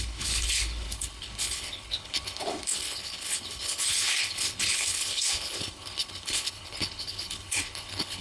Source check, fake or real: fake